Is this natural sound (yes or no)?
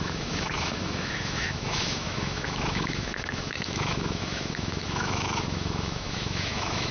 no